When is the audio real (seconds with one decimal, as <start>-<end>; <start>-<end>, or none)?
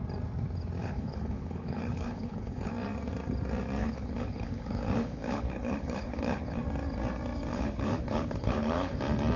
0.0-0.8; 2.7-3.8; 6.6-7.5; 9.0-9.4